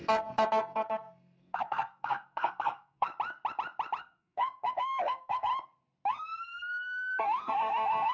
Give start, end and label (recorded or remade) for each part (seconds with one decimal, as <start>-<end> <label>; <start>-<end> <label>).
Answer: 0.0-3.1 remade; 3.1-4.0 recorded; 4.0-5.5 remade; 5.5-6.1 recorded; 6.1-8.1 remade